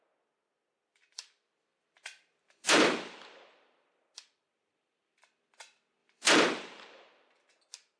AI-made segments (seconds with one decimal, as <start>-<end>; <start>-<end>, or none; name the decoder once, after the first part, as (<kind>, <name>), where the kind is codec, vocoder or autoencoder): 0.9-5.5 (vocoder, BigVGAN v2); 6.0-7.5